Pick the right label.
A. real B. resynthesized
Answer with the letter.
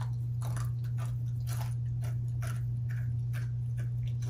A